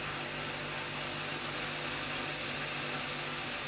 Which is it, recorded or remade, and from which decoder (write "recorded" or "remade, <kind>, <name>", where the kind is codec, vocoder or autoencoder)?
recorded